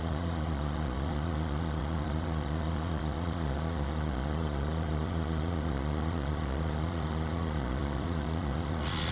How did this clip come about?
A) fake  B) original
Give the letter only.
A